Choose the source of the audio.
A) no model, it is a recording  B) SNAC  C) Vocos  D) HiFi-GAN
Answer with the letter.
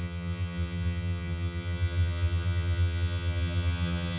D